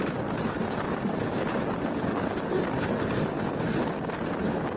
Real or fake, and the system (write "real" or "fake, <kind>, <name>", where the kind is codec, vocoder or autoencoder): real